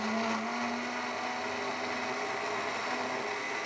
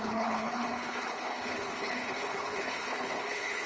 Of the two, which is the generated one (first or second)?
second